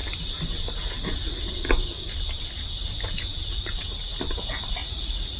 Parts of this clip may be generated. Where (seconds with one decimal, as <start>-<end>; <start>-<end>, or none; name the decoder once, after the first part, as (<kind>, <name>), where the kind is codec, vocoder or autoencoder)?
4.8-5.4 (vocoder, Vocos)